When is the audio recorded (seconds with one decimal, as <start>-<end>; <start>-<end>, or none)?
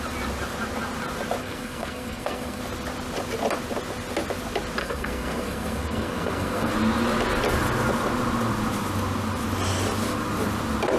0.0-1.4; 2.6-4.8; 6.7-11.0